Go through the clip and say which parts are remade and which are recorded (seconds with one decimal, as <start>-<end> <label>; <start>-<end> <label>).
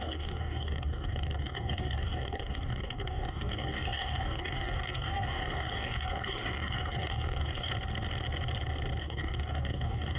0.0-7.7 remade; 7.7-9.0 recorded; 9.0-10.2 remade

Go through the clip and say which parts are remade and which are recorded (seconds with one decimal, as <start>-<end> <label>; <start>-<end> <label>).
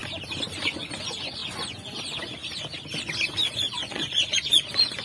0.0-0.6 recorded; 0.6-2.4 remade; 2.4-3.5 recorded; 3.5-5.0 remade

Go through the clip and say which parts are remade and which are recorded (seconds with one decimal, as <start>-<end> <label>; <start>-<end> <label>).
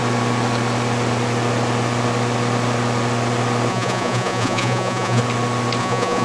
0.0-3.7 recorded; 3.7-5.2 remade; 5.2-5.8 recorded; 5.8-6.2 remade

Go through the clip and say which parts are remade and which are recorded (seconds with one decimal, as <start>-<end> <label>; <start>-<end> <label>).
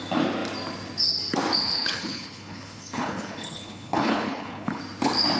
0.0-1.6 recorded; 1.6-4.8 remade; 4.8-5.4 recorded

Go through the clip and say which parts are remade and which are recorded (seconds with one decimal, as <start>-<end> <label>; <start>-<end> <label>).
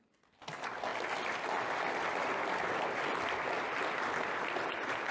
0.0-5.1 recorded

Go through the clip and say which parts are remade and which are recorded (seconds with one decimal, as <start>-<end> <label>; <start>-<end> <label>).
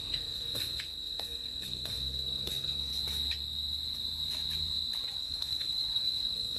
0.0-2.9 remade; 2.9-5.2 recorded; 5.2-6.6 remade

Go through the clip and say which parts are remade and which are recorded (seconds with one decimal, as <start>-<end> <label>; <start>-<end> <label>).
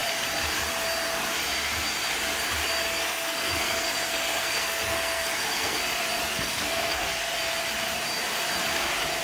0.0-2.9 recorded; 2.9-5.8 remade; 5.8-6.2 recorded; 6.2-7.3 remade; 7.3-9.2 recorded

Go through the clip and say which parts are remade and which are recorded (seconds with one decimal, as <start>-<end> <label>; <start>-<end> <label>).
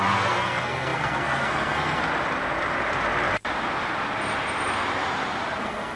0.0-2.0 remade; 2.0-5.6 recorded; 5.6-6.0 remade